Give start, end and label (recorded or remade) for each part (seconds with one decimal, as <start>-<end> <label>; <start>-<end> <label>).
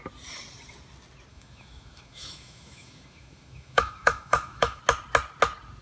0.0-1.3 recorded; 1.3-4.8 remade; 4.8-5.8 recorded